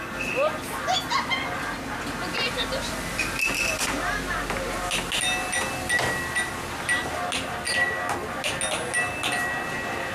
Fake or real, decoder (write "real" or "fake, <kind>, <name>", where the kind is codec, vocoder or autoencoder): real